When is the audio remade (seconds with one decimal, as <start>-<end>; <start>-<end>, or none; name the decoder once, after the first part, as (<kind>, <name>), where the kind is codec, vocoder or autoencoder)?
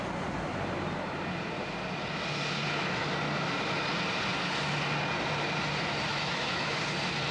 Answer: 6.1-6.8 (autoencoder, DAC-VAE)